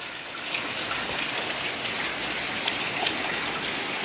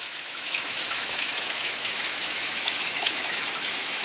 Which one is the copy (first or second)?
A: second